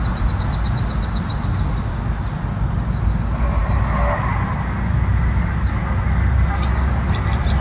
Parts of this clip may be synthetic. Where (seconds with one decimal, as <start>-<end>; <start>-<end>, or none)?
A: none